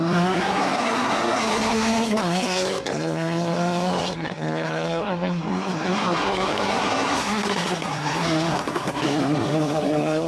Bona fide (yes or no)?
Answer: no